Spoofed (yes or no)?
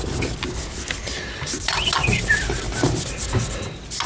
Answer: no